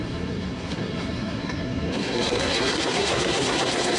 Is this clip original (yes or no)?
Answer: no